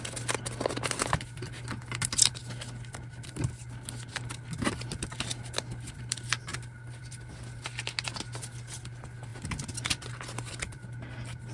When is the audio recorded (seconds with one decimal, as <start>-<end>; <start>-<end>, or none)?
0.0-11.5